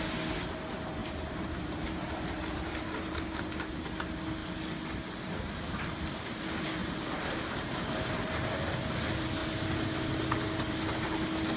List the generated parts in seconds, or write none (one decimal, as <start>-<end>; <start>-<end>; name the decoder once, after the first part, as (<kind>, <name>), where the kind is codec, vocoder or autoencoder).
1.0-3.9 (vocoder, BigVGAN v2); 6.8-7.9